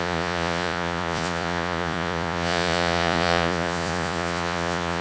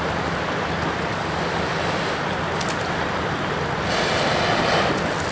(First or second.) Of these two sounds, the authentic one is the second